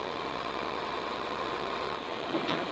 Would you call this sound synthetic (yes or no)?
yes